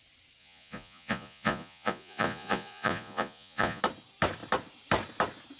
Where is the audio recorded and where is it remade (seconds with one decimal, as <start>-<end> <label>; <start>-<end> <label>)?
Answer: 0.0-0.4 recorded; 0.4-3.8 remade; 3.8-5.6 recorded